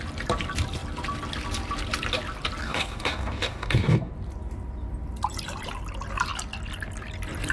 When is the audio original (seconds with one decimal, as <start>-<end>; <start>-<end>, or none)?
0.0-2.6; 4.1-7.5